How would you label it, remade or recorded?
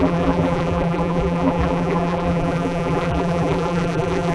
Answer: remade